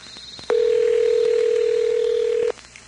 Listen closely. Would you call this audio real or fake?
real